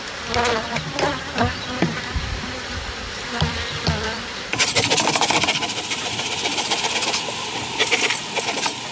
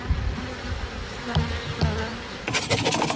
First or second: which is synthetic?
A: first